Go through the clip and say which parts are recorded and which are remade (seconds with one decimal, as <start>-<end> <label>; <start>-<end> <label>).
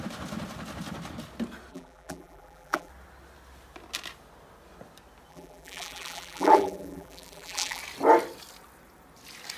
0.0-1.7 recorded; 1.7-2.9 remade; 2.9-5.3 recorded; 5.3-7.8 remade; 7.8-9.6 recorded